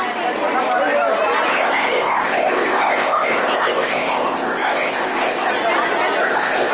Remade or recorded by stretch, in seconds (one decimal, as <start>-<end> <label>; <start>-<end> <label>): 0.0-1.5 recorded; 1.5-5.5 remade; 5.5-6.2 recorded; 6.2-6.7 remade